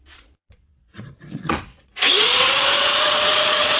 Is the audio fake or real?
fake